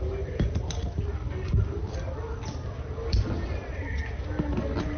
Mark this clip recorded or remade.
recorded